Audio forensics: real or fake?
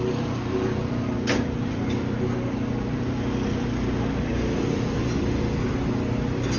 real